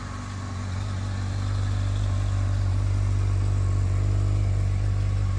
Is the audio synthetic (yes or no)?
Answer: no